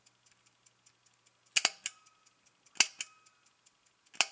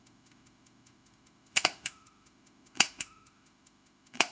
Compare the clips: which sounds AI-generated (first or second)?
second